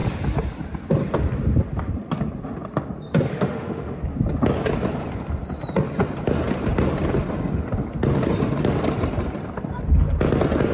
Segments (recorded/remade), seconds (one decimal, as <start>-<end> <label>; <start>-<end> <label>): 0.0-3.3 recorded; 3.3-4.0 remade; 4.0-10.7 recorded